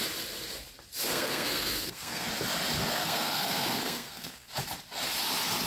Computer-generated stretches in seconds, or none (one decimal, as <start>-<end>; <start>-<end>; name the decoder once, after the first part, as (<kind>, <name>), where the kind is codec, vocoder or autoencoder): 1.1-2.3 (codec, SNAC); 2.8-4.5